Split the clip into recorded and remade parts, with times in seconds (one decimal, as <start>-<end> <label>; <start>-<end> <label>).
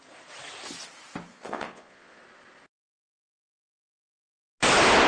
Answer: 0.0-1.3 recorded; 1.3-2.2 remade; 2.2-5.1 recorded